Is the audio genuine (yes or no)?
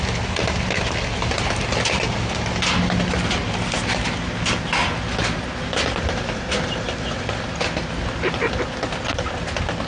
yes